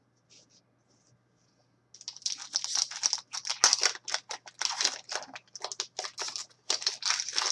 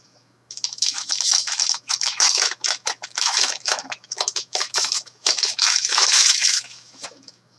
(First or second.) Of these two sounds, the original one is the first